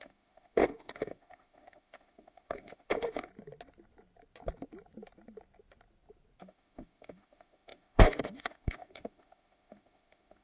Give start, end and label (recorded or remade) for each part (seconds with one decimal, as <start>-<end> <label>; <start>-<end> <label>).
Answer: 0.0-3.3 remade; 3.3-6.4 recorded; 6.4-10.4 remade

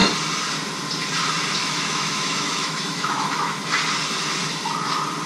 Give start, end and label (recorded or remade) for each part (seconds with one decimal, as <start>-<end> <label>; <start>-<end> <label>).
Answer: 0.0-1.6 recorded; 1.6-3.6 remade; 3.6-5.3 recorded